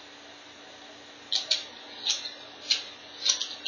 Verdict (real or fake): real